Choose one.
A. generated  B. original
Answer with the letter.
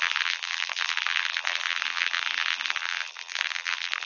A